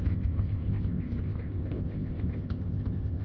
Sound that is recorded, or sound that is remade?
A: remade